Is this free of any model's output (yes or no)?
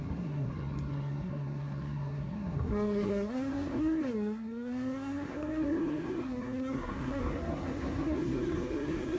no